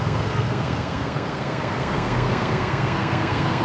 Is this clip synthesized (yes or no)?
yes